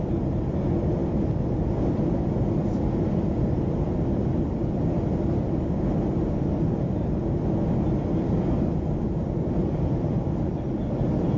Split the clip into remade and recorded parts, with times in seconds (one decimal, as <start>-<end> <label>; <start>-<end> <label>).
0.0-11.4 recorded